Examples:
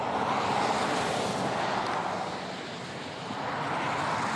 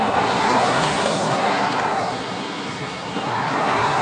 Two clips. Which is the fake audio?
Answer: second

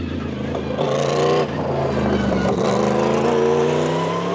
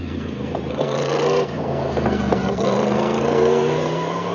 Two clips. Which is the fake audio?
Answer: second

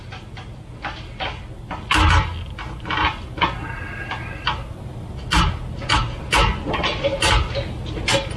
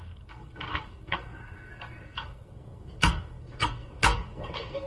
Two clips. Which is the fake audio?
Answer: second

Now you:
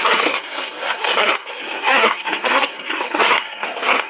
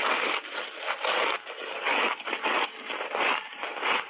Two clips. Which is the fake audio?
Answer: first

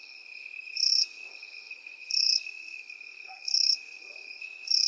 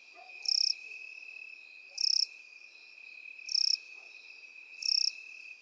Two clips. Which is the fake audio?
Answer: first